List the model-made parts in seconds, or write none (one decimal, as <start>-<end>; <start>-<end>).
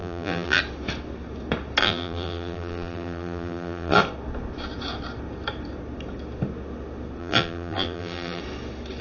0.0-0.6; 1.8-4.0; 7.2-8.4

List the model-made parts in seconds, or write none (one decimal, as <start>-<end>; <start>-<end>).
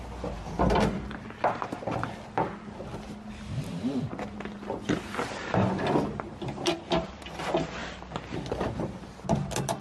none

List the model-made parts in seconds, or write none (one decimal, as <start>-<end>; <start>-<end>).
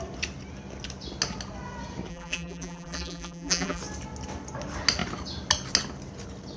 2.1-3.8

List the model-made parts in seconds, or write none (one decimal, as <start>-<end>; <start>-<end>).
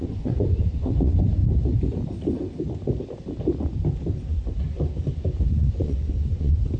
0.0-1.4; 5.5-6.8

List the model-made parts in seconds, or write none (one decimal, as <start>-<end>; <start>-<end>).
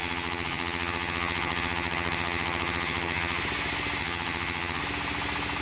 0.0-3.4; 4.0-4.8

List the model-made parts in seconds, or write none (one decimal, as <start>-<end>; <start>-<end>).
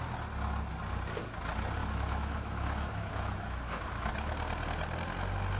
1.8-4.1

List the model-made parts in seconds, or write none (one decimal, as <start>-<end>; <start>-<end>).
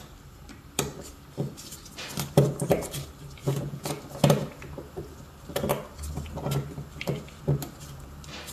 3.4-4.0